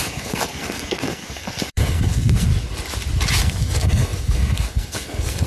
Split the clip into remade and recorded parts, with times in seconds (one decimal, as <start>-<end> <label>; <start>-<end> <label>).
0.0-2.5 remade; 2.5-3.4 recorded; 3.4-5.5 remade